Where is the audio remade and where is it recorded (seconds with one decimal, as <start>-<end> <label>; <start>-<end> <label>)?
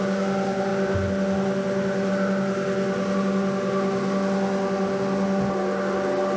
0.0-6.4 recorded